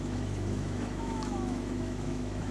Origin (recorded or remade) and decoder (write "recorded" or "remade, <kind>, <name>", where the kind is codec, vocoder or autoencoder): remade, autoencoder, DAC-VAE